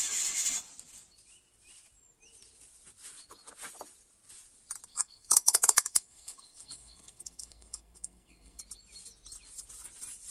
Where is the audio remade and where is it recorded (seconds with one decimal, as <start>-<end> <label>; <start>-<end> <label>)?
0.0-4.9 recorded; 4.9-8.6 remade; 8.6-10.3 recorded